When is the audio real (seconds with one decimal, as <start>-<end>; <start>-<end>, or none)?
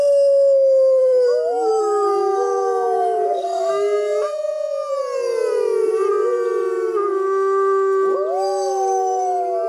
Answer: 0.0-1.7; 3.7-9.7